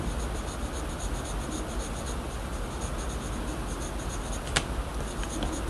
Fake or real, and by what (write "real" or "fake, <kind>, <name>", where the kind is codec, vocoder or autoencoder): real